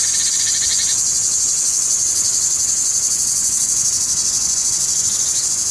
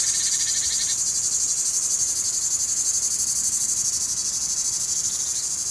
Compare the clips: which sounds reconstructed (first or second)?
first